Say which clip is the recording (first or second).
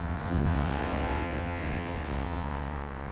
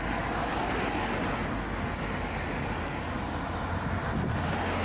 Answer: second